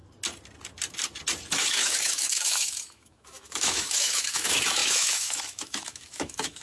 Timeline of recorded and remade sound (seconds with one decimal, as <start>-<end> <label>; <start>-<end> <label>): 0.0-1.6 recorded; 1.6-6.6 remade